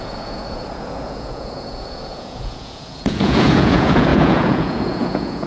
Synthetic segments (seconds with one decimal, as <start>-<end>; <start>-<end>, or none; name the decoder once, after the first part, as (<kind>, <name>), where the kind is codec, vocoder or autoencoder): 0.0-5.5 (vocoder, Vocos)